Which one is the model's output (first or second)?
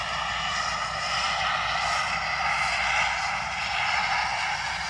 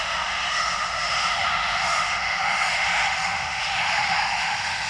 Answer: second